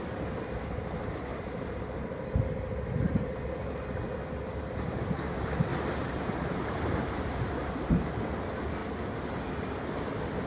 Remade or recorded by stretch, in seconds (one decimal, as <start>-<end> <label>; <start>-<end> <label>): 0.0-1.3 recorded; 1.3-1.8 remade; 1.8-5.7 recorded; 5.7-8.3 remade; 8.3-10.5 recorded

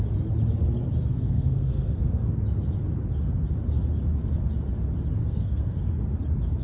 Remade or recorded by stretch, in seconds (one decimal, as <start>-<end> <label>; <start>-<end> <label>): 0.0-1.1 recorded; 1.1-2.3 remade; 2.3-5.2 recorded; 5.2-5.8 remade; 5.8-6.6 recorded

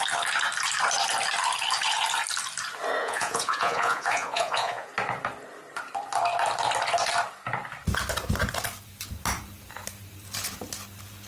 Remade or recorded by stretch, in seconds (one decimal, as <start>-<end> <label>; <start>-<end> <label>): 0.0-3.0 recorded; 3.0-4.9 remade; 4.9-11.3 recorded

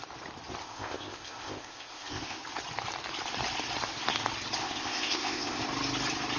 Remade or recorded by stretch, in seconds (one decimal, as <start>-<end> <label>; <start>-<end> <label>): 0.0-0.6 recorded; 0.6-2.4 remade; 2.4-4.6 recorded; 4.6-5.6 remade; 5.6-6.4 recorded